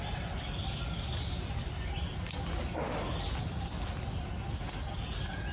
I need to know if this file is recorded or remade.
recorded